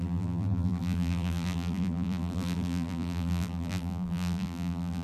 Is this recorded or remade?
remade